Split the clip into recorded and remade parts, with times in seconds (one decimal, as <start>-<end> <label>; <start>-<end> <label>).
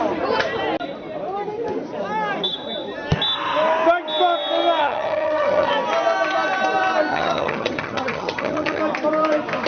0.0-4.8 recorded; 4.8-5.7 remade; 5.7-7.1 recorded; 7.1-8.8 remade; 8.8-9.7 recorded